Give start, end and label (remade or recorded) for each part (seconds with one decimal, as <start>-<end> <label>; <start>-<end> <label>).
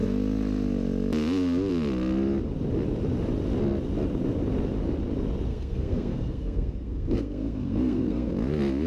0.0-5.5 recorded; 5.5-8.3 remade; 8.3-8.9 recorded